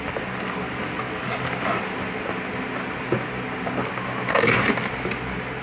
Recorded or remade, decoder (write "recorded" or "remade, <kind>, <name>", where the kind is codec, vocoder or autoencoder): recorded